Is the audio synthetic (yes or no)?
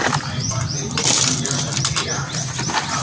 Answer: no